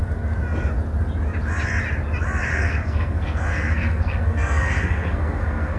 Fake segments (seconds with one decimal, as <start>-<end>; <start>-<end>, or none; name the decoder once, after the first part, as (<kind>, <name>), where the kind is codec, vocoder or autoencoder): 2.5-5.8 (codec, SNAC)